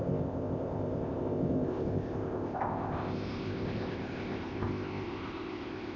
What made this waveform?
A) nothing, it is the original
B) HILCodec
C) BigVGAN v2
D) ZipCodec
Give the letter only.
D